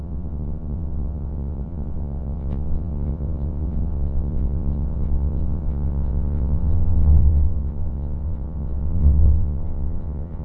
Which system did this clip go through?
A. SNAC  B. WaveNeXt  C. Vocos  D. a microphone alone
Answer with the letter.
B